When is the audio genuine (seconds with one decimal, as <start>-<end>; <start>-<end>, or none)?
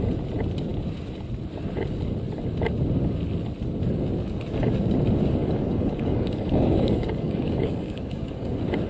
0.0-5.4; 8.5-8.9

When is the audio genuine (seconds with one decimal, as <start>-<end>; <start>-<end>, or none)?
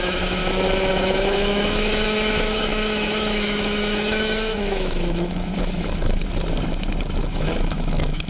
0.4-0.9; 6.2-7.2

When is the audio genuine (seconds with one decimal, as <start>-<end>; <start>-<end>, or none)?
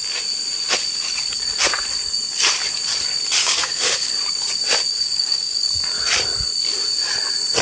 0.0-3.4; 4.1-4.9; 5.7-7.6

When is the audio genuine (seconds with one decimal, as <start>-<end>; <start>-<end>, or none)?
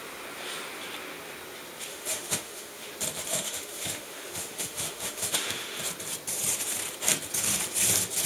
0.0-1.9; 2.9-3.3; 5.8-8.3